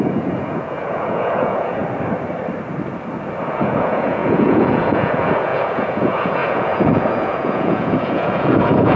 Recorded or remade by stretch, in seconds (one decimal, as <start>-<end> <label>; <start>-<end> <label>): 0.0-1.8 remade; 1.8-3.5 recorded; 3.5-9.0 remade

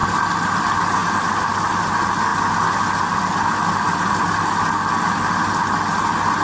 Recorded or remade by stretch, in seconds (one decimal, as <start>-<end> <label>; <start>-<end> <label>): 0.0-6.4 recorded

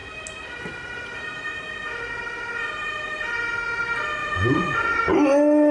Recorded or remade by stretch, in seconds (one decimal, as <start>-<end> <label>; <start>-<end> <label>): 0.0-4.2 recorded; 4.2-5.0 remade; 5.0-5.7 recorded

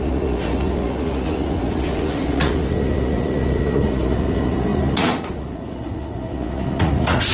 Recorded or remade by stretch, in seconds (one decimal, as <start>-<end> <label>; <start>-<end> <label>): 0.0-7.3 remade

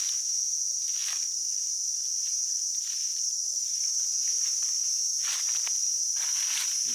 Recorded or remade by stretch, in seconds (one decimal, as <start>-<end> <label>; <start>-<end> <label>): 0.0-6.9 recorded